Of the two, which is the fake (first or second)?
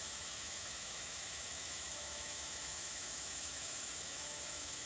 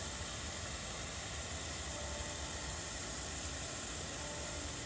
first